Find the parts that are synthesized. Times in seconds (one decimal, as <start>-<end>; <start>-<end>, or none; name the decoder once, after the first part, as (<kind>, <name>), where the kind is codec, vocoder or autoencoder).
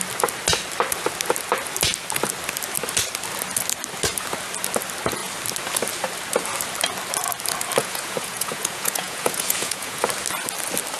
7.8-10.0 (vocoder, Vocos)